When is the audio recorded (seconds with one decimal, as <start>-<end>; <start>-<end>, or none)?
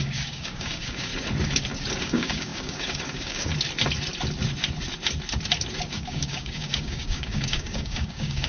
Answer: 1.1-2.0; 3.5-5.9